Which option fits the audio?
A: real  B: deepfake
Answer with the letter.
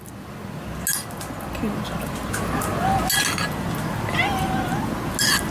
A